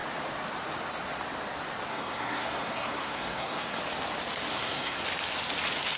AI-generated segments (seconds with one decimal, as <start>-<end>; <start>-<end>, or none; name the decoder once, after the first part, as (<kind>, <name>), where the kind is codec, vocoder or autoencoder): 1.9-3.8 (codec, SNAC); 4.5-5.0